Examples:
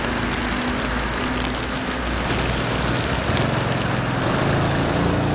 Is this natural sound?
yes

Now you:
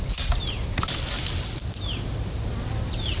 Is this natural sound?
yes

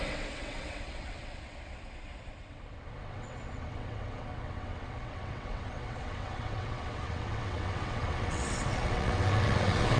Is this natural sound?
no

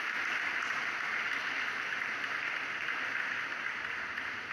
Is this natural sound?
yes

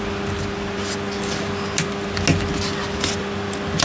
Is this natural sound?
yes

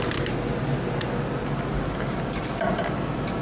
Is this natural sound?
yes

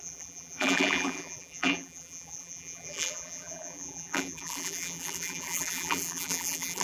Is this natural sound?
no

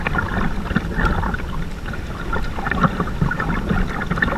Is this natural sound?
yes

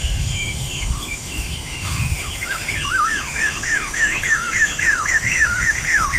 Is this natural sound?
no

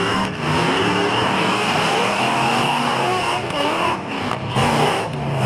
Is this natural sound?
no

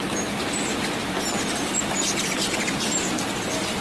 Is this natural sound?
yes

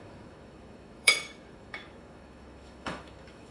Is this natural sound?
no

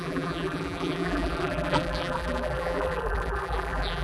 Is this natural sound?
no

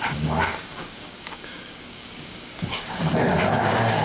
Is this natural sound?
no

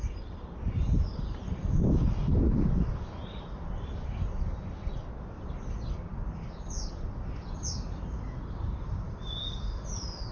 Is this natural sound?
yes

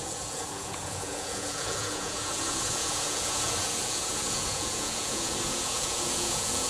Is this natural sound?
no